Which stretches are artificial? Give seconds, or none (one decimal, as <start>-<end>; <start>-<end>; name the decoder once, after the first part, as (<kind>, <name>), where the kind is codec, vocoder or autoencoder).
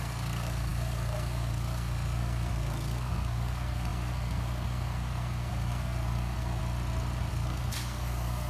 0.0-6.6 (codec, SNAC); 7.3-8.5